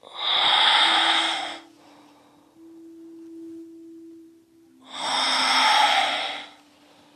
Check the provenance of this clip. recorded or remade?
recorded